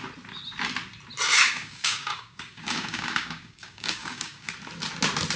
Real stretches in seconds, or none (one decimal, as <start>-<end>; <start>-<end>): 0.0-1.3; 4.5-5.4